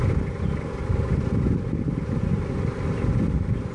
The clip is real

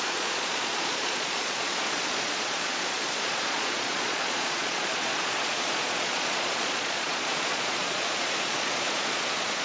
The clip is fake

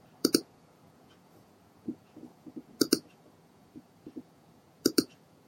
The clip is fake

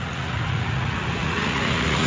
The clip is fake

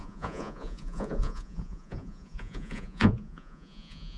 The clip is fake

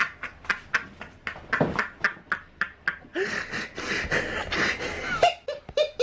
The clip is real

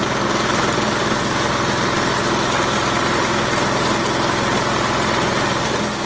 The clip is real